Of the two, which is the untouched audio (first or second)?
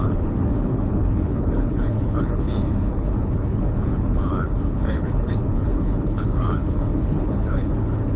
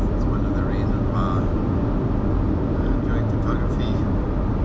second